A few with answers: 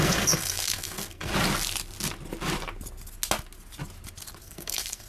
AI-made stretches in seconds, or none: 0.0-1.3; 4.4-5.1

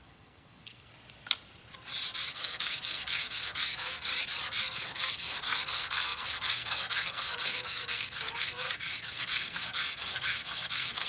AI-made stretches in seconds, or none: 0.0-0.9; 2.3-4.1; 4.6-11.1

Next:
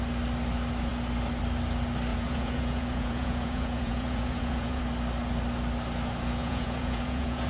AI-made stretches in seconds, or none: 2.1-4.8; 6.4-7.5

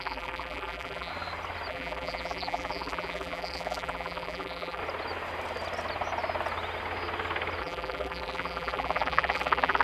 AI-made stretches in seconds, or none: 0.0-1.1; 1.7-4.8; 7.6-9.8

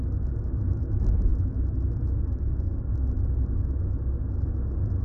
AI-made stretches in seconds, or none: none

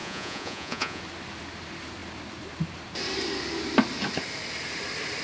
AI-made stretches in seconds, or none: 0.0-1.0

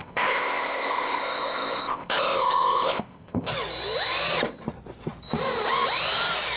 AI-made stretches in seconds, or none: 0.0-3.5